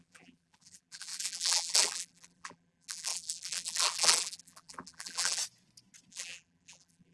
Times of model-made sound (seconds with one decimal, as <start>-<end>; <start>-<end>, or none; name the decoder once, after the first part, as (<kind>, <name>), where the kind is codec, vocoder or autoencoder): 0.0-5.4 (vocoder, BigVGAN v2); 6.1-7.1